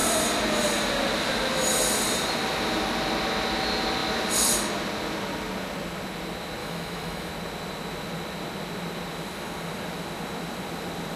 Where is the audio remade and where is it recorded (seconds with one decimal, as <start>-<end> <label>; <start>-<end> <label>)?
0.0-6.6 recorded; 6.6-7.3 remade; 7.3-11.2 recorded